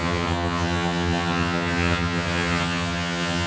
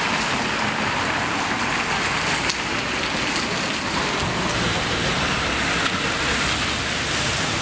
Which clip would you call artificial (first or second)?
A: first